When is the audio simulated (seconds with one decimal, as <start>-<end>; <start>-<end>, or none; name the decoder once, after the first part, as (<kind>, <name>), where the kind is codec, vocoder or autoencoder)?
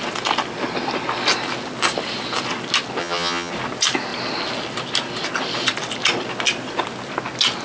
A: 3.0-3.5 (vocoder, HiFi-GAN)